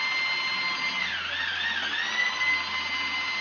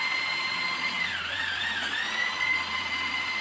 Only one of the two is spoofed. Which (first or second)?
second